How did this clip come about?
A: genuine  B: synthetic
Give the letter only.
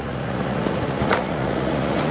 B